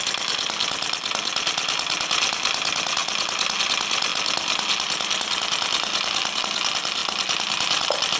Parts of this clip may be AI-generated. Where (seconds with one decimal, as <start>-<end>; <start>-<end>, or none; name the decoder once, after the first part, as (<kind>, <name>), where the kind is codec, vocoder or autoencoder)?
none